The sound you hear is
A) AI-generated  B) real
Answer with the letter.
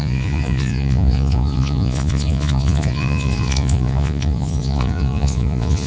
A